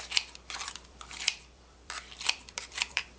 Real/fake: fake